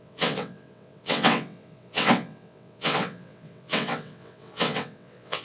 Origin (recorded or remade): remade